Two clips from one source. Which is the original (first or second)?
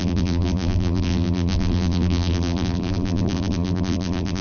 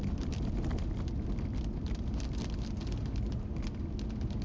second